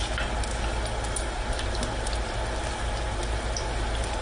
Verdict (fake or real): real